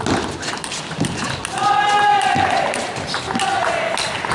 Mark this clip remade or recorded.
recorded